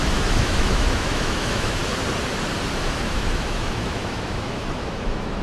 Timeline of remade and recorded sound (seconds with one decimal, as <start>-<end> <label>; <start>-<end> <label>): 0.0-1.8 remade; 1.8-2.8 recorded; 2.8-5.4 remade